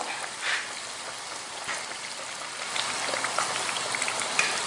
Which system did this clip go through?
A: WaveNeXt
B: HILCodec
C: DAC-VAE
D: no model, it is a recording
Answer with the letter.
D